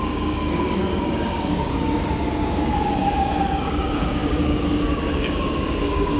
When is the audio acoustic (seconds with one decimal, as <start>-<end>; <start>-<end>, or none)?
none